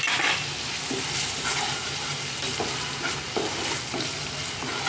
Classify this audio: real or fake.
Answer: real